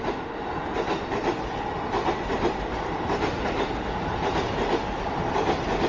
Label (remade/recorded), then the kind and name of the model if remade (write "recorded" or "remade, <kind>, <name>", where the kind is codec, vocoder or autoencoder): recorded